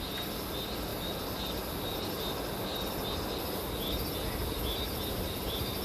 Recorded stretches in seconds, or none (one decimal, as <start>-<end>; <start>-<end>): 2.7-5.1

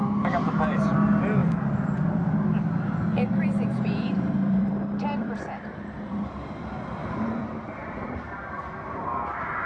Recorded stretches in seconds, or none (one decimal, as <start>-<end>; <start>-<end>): 0.0-1.4; 2.1-3.1; 6.6-7.0; 7.6-9.7